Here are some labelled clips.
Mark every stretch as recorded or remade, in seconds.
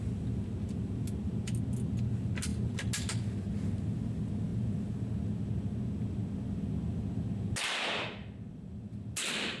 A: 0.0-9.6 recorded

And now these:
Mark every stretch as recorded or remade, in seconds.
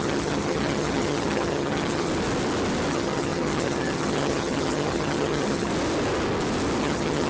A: 0.0-2.1 remade; 2.1-2.9 recorded; 2.9-5.7 remade; 5.7-6.8 recorded; 6.8-7.3 remade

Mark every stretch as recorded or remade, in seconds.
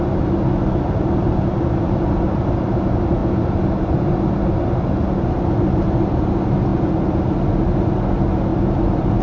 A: 0.0-8.5 recorded; 8.5-9.2 remade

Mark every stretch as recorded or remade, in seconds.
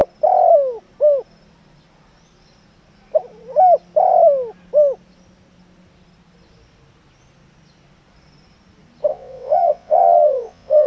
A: 0.0-9.1 recorded; 9.1-10.9 remade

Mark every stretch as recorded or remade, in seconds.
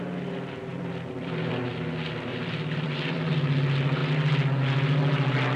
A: 0.0-0.7 recorded; 0.7-1.5 remade; 1.5-2.3 recorded; 2.3-3.3 remade; 3.3-5.6 recorded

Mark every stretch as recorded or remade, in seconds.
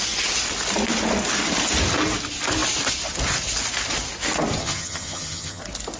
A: 0.0-4.6 recorded; 4.6-5.6 remade; 5.6-6.0 recorded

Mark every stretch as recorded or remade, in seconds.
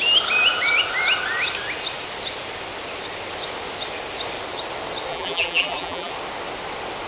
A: 0.0-5.1 recorded; 5.1-6.1 remade; 6.1-7.1 recorded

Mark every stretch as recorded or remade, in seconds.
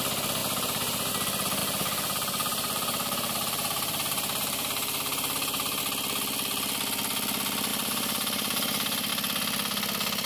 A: 0.0-0.4 recorded; 0.4-1.1 remade; 1.1-1.6 recorded; 1.6-5.8 remade; 5.8-7.7 recorded; 7.7-9.1 remade; 9.1-10.3 recorded